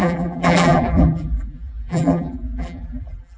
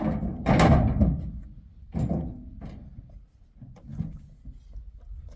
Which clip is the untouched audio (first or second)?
second